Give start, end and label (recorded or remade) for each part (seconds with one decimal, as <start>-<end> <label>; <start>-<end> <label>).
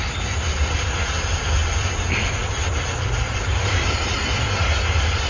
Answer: 0.0-5.3 recorded